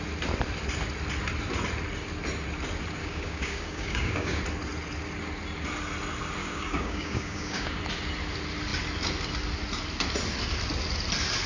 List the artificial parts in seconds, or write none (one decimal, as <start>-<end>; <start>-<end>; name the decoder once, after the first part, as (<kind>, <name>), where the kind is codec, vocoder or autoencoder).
3.0-4.4 (codec, DAC); 6.4-7.8